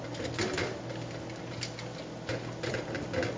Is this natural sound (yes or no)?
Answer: yes